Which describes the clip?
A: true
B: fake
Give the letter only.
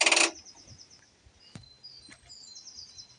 A